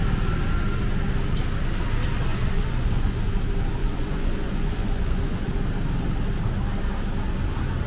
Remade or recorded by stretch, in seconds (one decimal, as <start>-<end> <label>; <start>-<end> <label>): 0.0-2.3 recorded; 2.3-3.2 remade; 3.2-3.8 recorded; 3.8-5.5 remade; 5.5-7.9 recorded